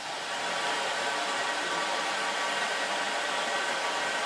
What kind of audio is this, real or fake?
fake